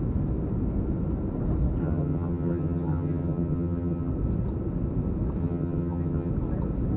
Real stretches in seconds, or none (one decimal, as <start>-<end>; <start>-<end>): 0.0-1.8; 4.1-5.4; 6.3-7.0